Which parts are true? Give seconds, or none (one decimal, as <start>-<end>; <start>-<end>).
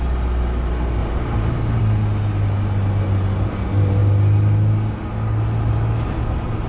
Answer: 0.0-1.0; 1.8-6.7